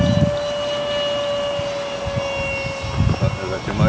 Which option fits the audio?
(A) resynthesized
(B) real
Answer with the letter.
B